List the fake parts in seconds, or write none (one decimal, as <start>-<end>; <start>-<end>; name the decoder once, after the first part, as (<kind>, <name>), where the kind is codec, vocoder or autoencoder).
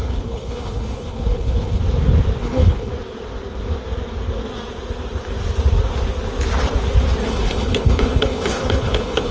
0.0-1.8 (codec, HILCodec); 2.4-2.9; 7.3-9.3